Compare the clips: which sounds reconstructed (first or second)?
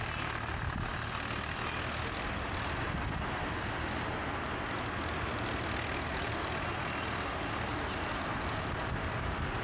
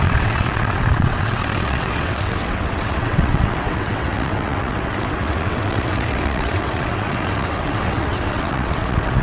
second